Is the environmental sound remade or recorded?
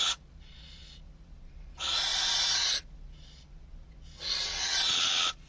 remade